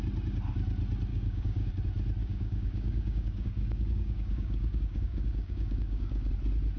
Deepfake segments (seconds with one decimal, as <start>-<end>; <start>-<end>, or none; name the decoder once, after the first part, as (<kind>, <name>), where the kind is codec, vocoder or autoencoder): 1.1-1.7 (codec, DAC); 2.2-6.3